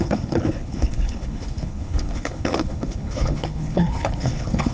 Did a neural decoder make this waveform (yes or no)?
yes